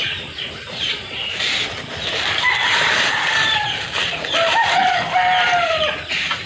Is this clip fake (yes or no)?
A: yes